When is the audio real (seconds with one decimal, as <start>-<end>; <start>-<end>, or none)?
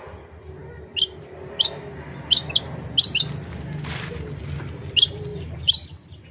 0.0-5.3